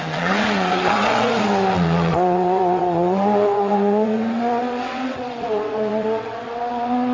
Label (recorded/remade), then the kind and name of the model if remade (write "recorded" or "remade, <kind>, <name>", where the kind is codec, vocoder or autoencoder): remade, vocoder, WaveNeXt